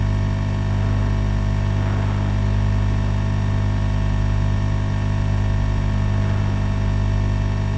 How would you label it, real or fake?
real